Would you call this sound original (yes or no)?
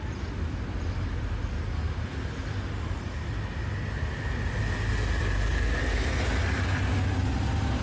yes